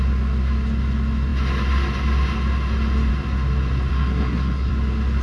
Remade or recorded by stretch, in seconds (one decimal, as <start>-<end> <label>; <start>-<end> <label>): 0.0-3.9 recorded; 3.9-4.7 remade; 4.7-5.2 recorded